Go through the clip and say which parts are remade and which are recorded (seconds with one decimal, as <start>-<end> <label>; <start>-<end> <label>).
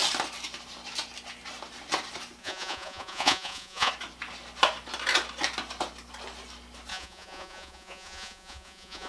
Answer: 0.0-2.4 recorded; 2.4-3.9 remade; 3.9-6.9 recorded; 6.9-9.1 remade